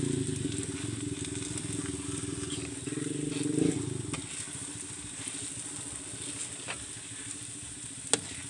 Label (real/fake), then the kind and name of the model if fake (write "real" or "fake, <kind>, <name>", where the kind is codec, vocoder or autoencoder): real